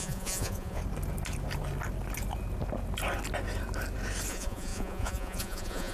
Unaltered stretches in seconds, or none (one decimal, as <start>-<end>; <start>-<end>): 0.8-4.3